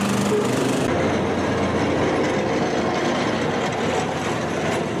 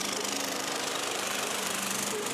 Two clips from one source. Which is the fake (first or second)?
second